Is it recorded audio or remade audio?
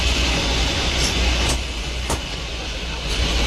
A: remade